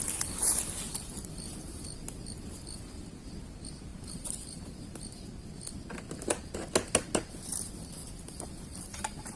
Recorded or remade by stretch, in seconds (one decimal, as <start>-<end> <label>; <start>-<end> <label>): 0.0-3.9 recorded; 3.9-5.9 remade; 5.9-8.0 recorded; 8.0-9.4 remade